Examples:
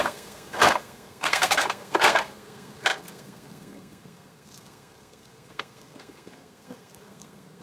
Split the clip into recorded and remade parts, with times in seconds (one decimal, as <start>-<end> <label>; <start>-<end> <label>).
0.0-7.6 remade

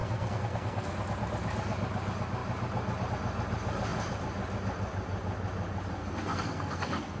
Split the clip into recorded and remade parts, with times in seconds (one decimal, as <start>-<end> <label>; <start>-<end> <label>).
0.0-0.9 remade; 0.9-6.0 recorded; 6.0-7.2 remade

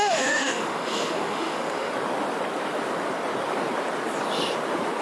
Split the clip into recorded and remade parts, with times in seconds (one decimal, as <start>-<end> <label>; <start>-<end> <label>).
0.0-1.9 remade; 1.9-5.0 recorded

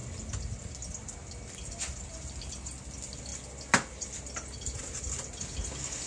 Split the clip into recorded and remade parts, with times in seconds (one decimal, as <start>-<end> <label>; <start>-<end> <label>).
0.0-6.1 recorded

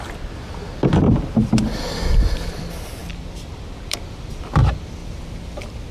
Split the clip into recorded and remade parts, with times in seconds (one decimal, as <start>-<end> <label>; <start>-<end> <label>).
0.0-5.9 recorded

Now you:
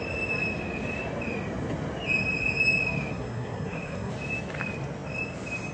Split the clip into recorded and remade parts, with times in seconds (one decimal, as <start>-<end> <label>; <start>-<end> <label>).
0.0-3.1 recorded; 3.1-4.1 remade; 4.1-5.7 recorded

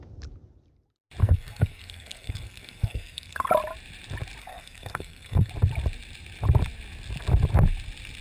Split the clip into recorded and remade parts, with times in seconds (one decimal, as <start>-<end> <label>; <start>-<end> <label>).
0.0-1.2 recorded; 1.2-3.5 remade; 3.5-4.4 recorded; 4.4-5.5 remade; 5.5-8.2 recorded

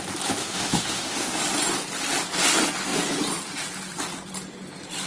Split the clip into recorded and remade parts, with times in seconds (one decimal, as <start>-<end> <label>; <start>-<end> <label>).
0.0-0.4 recorded; 0.4-1.4 remade; 1.4-5.1 recorded